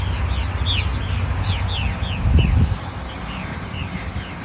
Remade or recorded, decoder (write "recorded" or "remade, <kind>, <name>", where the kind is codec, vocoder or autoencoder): recorded